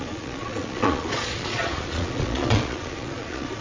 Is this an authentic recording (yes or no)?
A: no